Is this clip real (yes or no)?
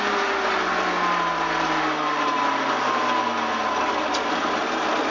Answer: yes